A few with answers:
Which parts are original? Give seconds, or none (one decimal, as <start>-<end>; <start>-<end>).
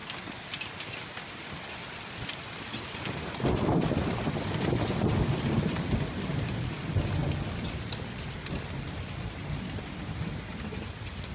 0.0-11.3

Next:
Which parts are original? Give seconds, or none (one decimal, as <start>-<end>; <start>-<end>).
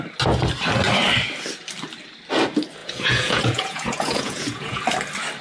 0.0-2.8; 4.8-5.4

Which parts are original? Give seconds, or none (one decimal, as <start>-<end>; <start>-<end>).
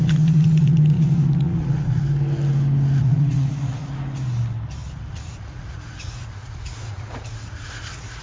2.0-3.0; 3.8-5.1